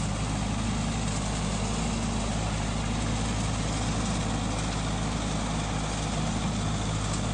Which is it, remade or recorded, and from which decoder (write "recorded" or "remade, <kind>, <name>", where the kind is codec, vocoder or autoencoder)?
recorded